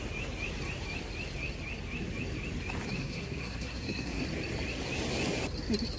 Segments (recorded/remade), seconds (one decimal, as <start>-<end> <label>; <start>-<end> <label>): 0.0-3.0 recorded; 3.0-4.2 remade; 4.2-6.0 recorded